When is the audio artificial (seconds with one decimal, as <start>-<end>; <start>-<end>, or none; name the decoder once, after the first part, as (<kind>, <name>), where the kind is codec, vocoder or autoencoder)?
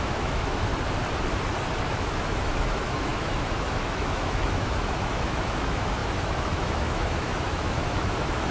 0.0-0.7 (autoencoder, DAC-VAE); 1.8-8.5